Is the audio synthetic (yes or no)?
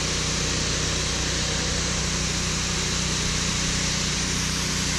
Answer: no